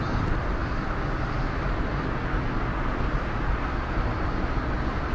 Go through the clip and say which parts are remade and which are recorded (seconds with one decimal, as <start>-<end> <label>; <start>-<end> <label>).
0.0-5.1 recorded

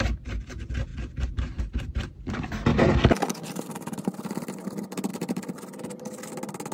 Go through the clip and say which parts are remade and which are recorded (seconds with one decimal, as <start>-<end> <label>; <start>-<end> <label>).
0.0-0.9 recorded; 0.9-1.6 remade; 1.6-2.7 recorded; 2.7-4.5 remade; 4.5-5.1 recorded; 5.1-6.2 remade; 6.2-6.7 recorded

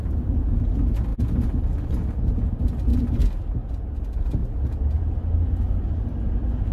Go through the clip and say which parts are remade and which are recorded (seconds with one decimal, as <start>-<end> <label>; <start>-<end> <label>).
0.0-6.7 recorded

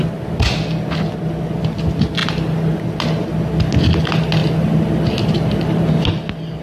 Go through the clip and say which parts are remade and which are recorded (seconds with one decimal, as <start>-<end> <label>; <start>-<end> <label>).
0.0-4.4 recorded; 4.4-5.8 remade; 5.8-6.6 recorded